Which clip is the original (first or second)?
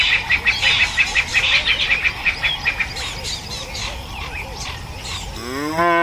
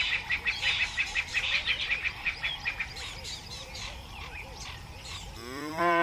first